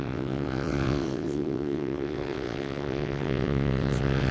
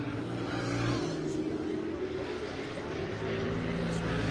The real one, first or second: second